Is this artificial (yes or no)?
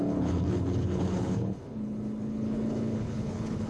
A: yes